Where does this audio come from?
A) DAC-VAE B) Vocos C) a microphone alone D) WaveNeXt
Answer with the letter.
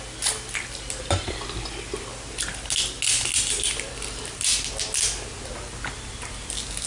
C